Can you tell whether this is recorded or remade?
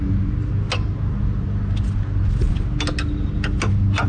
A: recorded